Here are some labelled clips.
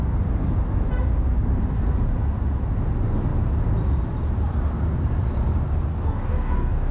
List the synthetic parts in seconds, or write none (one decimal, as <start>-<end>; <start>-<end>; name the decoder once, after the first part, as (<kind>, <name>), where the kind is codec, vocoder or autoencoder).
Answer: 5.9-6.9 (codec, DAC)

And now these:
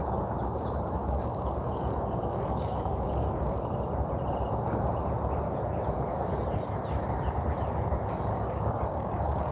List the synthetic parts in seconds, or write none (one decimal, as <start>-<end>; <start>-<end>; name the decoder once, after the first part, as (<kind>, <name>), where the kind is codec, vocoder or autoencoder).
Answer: 1.0-3.6 (codec, DAC); 8.3-9.5

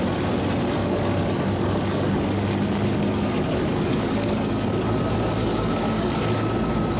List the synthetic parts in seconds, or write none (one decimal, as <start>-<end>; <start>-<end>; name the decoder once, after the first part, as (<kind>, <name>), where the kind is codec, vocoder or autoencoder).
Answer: 0.8-5.0 (codec, DAC); 5.4-6.2